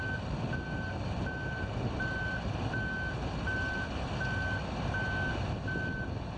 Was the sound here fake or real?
real